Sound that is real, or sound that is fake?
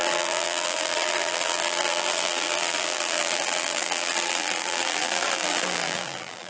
fake